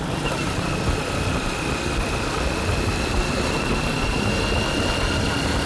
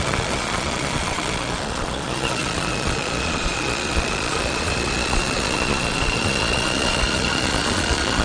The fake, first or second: second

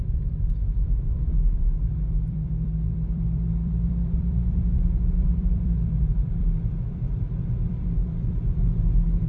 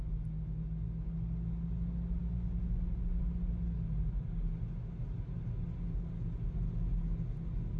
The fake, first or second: first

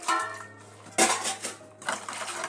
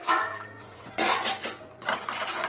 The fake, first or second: second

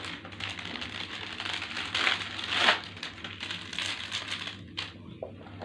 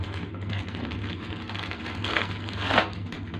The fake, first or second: second